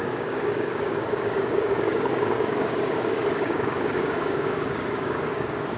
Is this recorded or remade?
remade